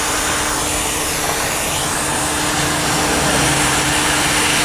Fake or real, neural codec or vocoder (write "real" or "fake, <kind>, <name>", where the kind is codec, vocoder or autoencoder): real